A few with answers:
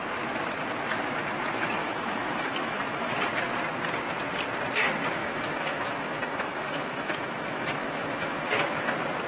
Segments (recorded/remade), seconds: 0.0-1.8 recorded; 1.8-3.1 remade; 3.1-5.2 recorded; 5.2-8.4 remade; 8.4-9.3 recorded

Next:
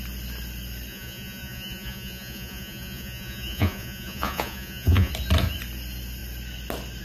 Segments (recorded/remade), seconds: 0.0-0.9 recorded; 0.9-5.1 remade; 5.1-7.0 recorded

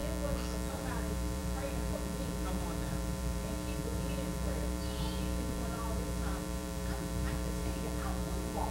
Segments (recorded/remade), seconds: 0.0-0.7 recorded; 0.7-8.7 remade